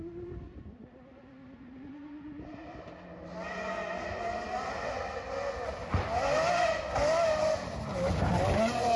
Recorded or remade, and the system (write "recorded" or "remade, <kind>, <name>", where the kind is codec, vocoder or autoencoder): recorded